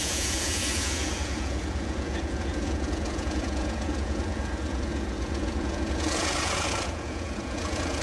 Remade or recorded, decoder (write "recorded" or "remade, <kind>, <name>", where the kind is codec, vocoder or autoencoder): remade, vocoder, Vocos